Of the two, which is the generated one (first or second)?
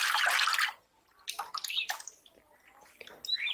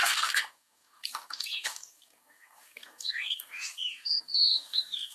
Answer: second